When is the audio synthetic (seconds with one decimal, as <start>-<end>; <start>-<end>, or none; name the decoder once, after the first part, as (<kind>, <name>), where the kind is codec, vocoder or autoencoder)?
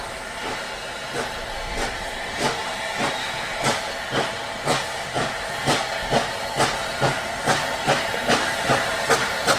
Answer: 3.2-3.8 (autoencoder, DAC-VAE)